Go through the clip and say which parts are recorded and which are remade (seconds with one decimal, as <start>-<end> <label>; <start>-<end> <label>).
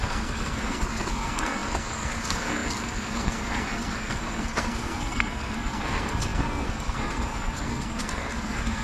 0.0-8.8 remade